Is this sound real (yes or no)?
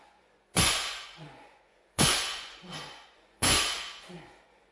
no